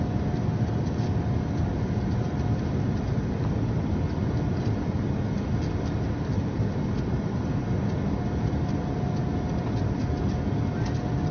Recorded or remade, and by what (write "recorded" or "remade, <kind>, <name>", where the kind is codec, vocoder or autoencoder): recorded